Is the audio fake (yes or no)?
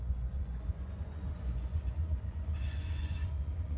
yes